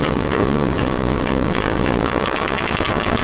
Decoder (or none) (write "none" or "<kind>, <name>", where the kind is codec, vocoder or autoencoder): vocoder, WaveNeXt